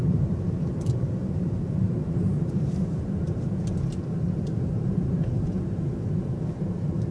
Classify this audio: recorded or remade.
remade